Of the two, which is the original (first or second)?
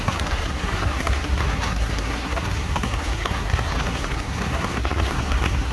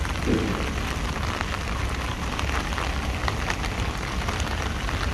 second